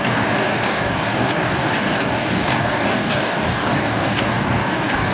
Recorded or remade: remade